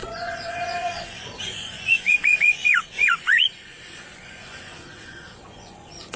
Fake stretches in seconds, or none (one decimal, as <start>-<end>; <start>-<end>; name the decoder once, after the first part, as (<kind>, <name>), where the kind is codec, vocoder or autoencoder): 0.0-6.2 (vocoder, Vocos)